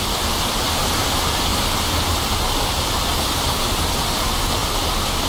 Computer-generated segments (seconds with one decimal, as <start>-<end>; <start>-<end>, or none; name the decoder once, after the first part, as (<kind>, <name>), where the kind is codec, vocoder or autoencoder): 1.5-2.4 (vocoder, BigVGAN v2)